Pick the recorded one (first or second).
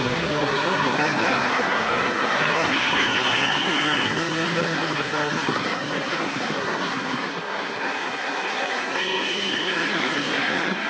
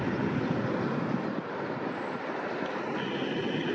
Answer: second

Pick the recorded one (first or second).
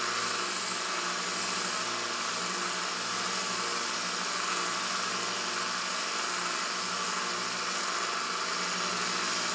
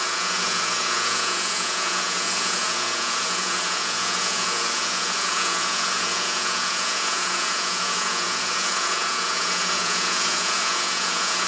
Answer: first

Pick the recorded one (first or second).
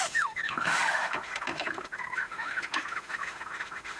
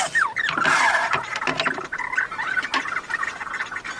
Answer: second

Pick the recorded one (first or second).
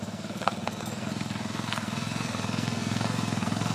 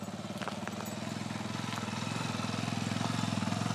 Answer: second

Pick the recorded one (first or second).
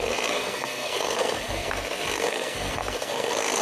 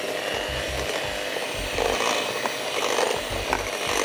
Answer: second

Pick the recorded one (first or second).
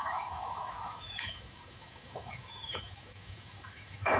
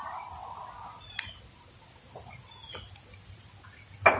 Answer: second